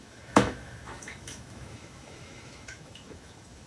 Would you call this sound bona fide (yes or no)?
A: no